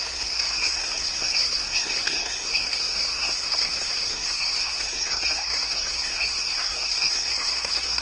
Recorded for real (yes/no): no